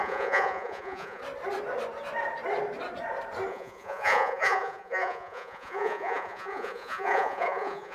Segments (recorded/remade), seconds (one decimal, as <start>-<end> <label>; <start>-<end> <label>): 0.0-1.2 remade; 1.2-3.5 recorded; 3.5-7.9 remade